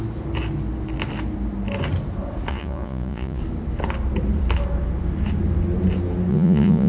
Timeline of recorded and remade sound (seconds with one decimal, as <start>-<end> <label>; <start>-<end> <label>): 0.0-2.5 recorded; 2.5-3.4 remade; 3.4-6.3 recorded; 6.3-6.9 remade

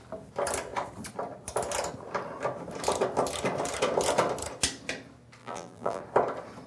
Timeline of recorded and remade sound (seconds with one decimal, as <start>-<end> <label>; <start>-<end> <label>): 0.0-5.4 recorded; 5.4-6.0 remade; 6.0-6.7 recorded

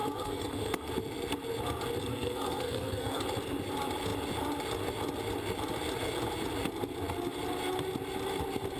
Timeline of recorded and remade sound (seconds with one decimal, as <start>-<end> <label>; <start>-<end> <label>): 0.0-0.9 remade; 0.9-2.1 recorded; 2.1-3.2 remade; 3.2-8.8 recorded

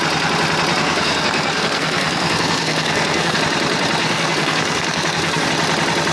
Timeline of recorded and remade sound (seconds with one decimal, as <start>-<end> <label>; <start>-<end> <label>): 0.0-0.8 recorded; 0.8-3.4 remade; 3.4-4.0 recorded; 4.0-5.5 remade; 5.5-6.1 recorded

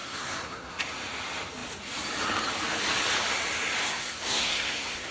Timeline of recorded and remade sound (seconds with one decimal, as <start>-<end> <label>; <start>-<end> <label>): 0.0-0.8 remade; 0.8-3.8 recorded; 3.8-5.1 remade